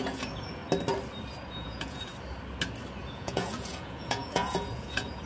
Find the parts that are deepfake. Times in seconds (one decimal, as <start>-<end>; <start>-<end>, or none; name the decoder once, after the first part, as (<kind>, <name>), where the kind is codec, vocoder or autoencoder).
0.0-0.6 (vocoder, Vocos); 1.5-2.1; 3.0-5.3